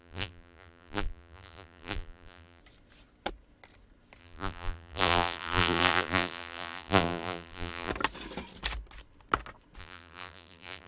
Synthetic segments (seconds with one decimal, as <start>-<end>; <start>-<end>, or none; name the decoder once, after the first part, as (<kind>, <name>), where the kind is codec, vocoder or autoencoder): 0.0-2.6 (vocoder, BigVGAN v2); 4.2-7.9; 9.8-10.9